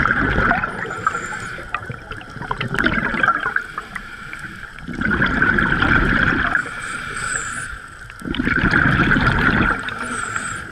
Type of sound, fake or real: fake